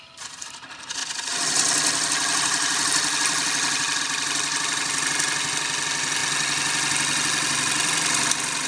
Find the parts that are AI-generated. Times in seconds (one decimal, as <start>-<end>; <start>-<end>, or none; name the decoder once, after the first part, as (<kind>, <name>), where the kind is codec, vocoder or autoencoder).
none